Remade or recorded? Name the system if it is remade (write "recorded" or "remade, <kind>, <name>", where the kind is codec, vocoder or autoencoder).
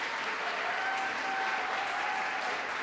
recorded